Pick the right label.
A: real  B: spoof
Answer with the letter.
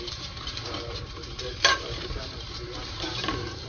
B